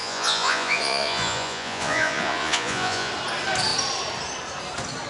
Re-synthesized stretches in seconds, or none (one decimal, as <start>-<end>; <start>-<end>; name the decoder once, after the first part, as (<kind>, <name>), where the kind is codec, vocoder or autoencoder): 0.0-3.1 (vocoder, Vocos)